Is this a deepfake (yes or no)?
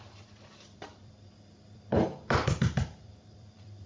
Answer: yes